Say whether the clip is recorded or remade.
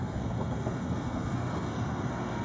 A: remade